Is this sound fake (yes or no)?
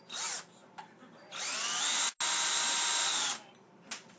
no